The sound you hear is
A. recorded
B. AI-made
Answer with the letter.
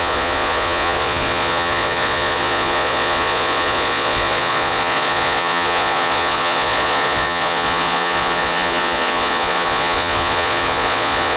B